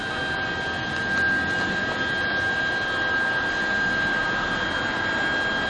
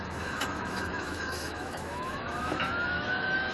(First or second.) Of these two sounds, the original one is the first